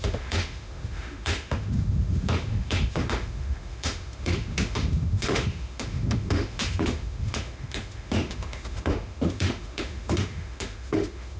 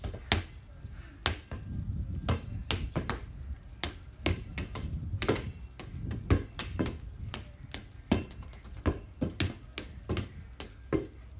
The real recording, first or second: second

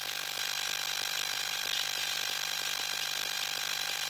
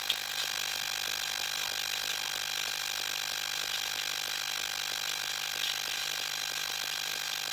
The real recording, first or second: second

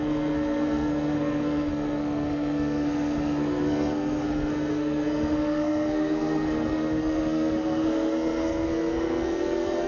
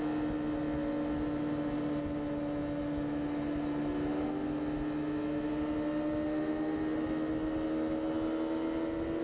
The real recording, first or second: second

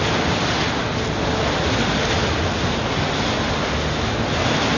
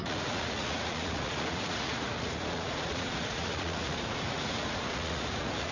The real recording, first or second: first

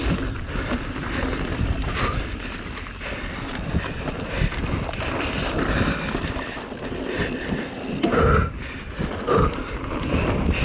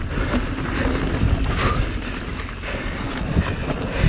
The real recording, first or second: second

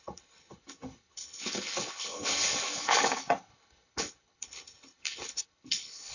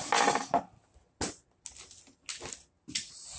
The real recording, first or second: second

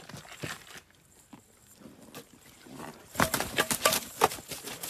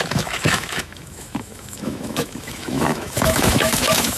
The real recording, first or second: first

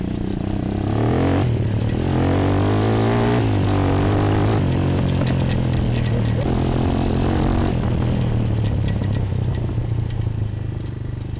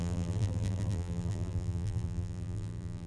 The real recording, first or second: first